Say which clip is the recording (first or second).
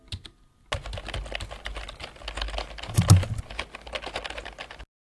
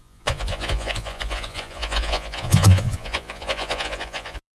first